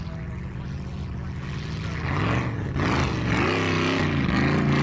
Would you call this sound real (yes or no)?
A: yes